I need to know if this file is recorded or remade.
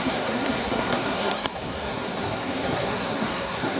remade